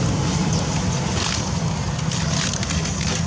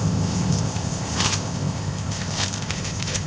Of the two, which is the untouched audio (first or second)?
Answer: first